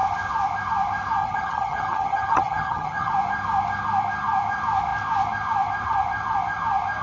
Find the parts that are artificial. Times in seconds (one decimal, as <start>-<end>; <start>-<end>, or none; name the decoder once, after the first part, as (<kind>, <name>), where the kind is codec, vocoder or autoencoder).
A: 1.2-3.1 (vocoder, HiFi-GAN)